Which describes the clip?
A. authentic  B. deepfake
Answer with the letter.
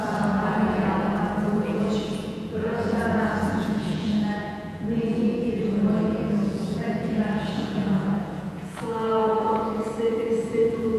B